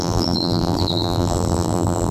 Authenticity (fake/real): fake